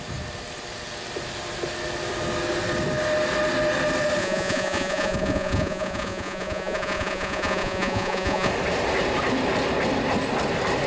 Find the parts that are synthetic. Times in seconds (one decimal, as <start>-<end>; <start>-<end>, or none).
4.2-8.5